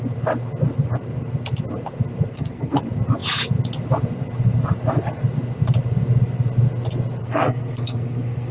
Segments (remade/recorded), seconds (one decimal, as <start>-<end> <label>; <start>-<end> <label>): 0.0-2.3 recorded; 2.3-2.8 remade; 2.8-7.2 recorded; 7.2-8.5 remade